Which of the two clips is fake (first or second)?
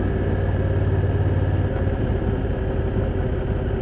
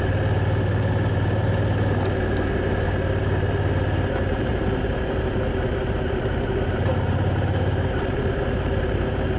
second